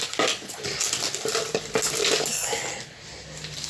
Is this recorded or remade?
recorded